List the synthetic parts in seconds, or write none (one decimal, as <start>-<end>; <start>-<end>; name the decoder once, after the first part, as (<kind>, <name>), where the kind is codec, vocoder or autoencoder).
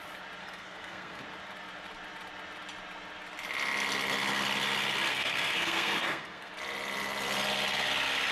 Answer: 0.4-1.2 (codec, SNAC); 5.1-6.5